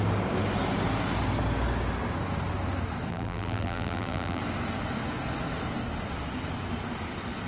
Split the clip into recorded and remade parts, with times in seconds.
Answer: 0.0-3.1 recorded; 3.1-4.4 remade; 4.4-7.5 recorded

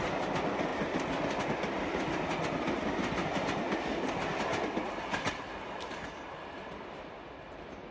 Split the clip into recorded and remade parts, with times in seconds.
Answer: 0.0-7.9 recorded

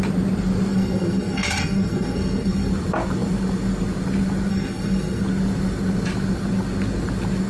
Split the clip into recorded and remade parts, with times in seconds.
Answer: 0.0-0.7 recorded; 0.7-2.7 remade; 2.7-4.5 recorded; 4.5-5.2 remade; 5.2-7.5 recorded

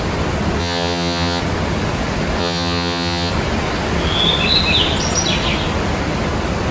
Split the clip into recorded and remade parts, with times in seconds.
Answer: 0.0-0.6 recorded; 0.6-1.4 remade; 1.4-2.4 recorded; 2.4-3.3 remade; 3.3-6.7 recorded

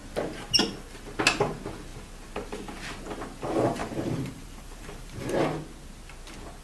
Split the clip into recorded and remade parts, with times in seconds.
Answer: 0.0-3.8 recorded; 3.8-5.4 remade; 5.4-6.6 recorded

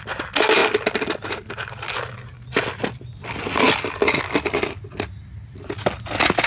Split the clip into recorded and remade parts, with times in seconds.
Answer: 0.0-6.5 recorded

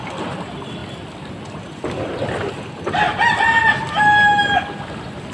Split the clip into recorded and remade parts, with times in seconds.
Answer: 0.0-5.3 recorded

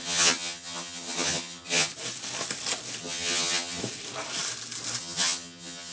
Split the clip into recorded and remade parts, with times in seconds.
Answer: 0.0-1.9 remade; 1.9-3.0 recorded; 3.0-3.8 remade; 3.8-5.0 recorded; 5.0-5.9 remade